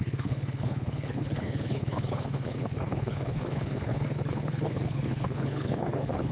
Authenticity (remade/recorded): remade